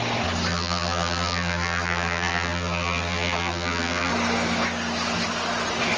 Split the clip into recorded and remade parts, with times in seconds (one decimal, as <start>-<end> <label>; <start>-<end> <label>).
0.0-0.5 recorded; 0.5-4.1 remade; 4.1-6.0 recorded